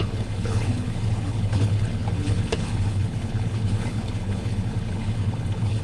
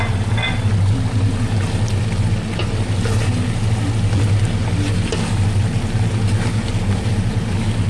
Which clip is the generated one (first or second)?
first